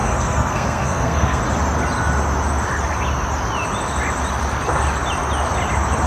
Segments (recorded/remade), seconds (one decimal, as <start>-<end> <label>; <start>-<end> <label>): 0.0-1.4 remade; 1.4-6.1 recorded